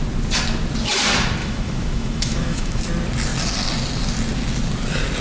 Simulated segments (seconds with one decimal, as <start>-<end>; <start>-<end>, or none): 1.4-2.8